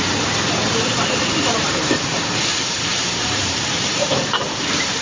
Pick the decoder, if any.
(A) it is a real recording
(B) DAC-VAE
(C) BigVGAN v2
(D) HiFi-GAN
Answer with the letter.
C